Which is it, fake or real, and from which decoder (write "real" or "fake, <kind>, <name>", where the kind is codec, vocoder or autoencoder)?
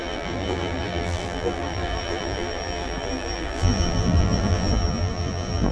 fake, vocoder, BigVGAN v2